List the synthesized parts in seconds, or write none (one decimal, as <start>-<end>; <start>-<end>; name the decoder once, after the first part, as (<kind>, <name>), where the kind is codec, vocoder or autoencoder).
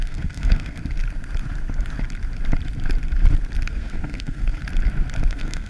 0.0-0.8 (codec, SNAC); 3.7-4.6; 5.3-5.7